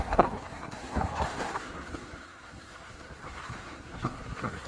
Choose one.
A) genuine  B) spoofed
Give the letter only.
B